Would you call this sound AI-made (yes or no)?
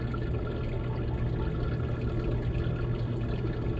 no